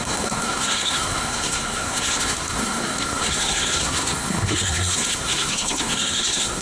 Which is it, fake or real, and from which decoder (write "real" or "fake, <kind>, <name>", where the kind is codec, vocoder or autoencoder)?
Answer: fake, codec, SNAC